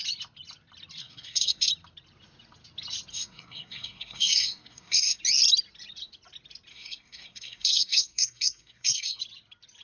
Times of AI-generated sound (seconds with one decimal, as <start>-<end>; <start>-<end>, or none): 1.0-1.7; 3.1-5.2; 6.7-9.2